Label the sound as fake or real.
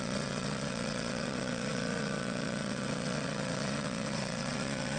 fake